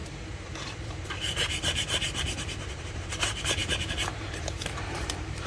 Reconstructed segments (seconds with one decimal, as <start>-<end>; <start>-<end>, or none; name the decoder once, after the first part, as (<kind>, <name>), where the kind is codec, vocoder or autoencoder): 0.0-5.5 (vocoder, BigVGAN v2)